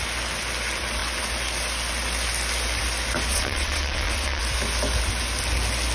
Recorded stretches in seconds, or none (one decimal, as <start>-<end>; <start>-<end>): 0.0-3.3; 4.4-5.9